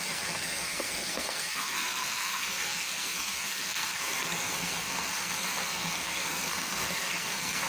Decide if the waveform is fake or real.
fake